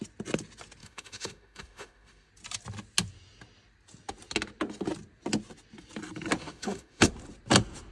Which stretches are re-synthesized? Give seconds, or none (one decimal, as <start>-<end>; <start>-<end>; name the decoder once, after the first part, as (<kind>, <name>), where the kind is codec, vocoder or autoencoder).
0.8-2.3 (autoencoder, DAC-VAE); 6.4-7.1